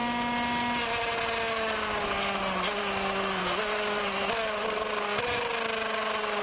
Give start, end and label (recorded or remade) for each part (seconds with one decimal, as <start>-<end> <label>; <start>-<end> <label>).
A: 0.0-3.4 recorded; 3.4-4.0 remade; 4.0-6.4 recorded

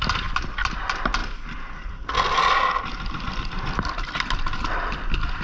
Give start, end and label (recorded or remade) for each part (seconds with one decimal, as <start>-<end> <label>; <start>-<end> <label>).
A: 0.0-5.4 recorded

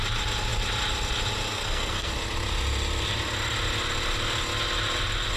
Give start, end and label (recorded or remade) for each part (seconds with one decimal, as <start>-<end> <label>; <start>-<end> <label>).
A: 0.0-1.5 recorded; 1.5-2.1 remade; 2.1-5.4 recorded